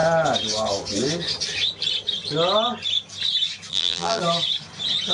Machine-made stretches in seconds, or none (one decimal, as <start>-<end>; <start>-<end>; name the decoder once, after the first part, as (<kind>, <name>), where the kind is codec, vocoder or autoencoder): 3.7-4.2 (vocoder, BigVGAN v2)